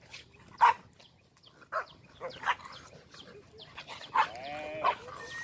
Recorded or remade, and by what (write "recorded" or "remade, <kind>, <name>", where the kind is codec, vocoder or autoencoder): recorded